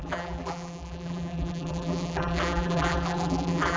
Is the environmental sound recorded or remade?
remade